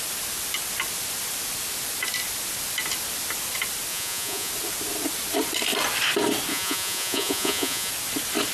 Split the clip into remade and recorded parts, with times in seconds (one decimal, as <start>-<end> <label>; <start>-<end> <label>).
0.0-3.9 recorded; 3.9-4.5 remade; 4.5-6.5 recorded; 6.5-7.9 remade; 7.9-8.5 recorded